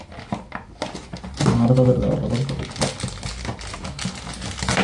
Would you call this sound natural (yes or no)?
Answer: yes